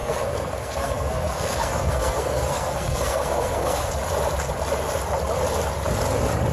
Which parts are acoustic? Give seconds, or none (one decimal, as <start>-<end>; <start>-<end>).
3.9-6.5